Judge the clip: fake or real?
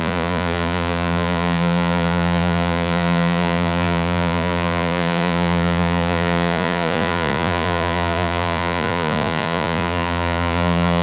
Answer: fake